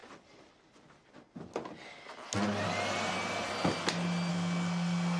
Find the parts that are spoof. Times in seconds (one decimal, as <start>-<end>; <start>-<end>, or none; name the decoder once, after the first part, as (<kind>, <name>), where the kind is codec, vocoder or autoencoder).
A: 4.3-5.2 (codec, SNAC)